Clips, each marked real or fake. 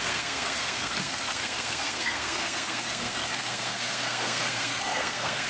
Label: fake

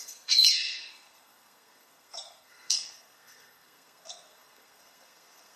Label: fake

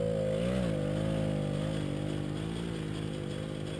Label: real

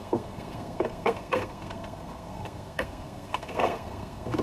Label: fake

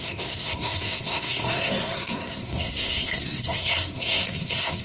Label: fake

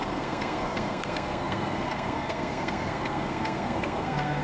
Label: fake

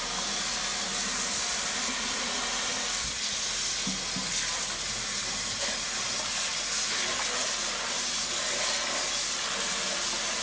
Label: real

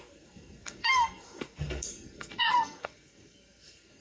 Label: fake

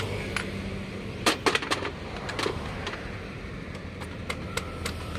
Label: real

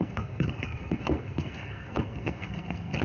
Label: fake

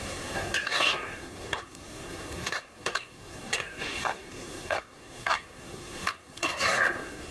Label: fake